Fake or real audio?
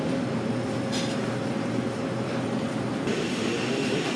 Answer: fake